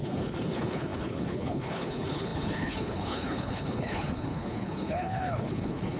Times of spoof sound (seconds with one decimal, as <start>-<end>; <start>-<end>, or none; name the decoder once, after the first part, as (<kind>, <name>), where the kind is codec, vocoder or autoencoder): 0.0-6.0 (codec, HILCodec)